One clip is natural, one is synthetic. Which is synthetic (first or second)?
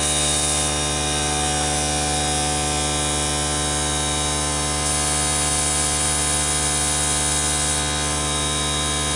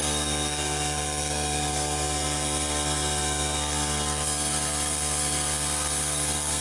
second